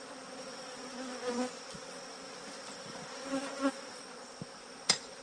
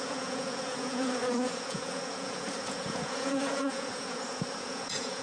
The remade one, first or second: second